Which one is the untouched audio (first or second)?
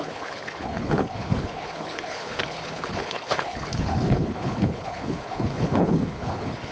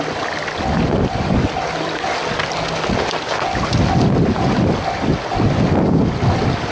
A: second